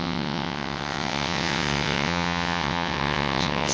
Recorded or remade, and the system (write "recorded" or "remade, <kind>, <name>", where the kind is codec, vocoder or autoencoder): remade, vocoder, WaveNeXt